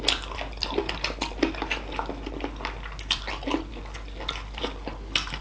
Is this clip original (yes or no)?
yes